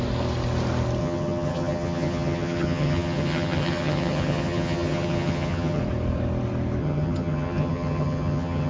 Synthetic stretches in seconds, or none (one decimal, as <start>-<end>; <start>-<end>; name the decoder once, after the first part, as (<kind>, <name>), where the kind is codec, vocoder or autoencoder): 1.0-5.8 (vocoder, HiFi-GAN); 6.8-8.7